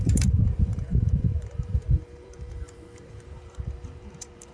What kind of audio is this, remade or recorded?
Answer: remade